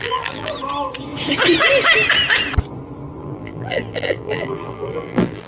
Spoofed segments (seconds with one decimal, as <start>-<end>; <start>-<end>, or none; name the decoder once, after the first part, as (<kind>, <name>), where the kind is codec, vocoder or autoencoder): 0.0-0.5 (vocoder, BigVGAN v2); 3.2-5.5